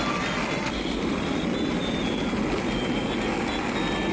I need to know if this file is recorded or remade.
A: recorded